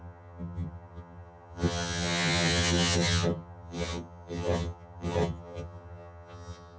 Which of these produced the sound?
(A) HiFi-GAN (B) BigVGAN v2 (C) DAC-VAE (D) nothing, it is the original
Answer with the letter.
A